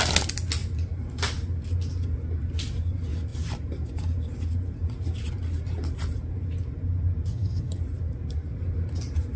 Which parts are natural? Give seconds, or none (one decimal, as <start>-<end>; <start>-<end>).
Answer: 0.0-7.3; 7.8-9.4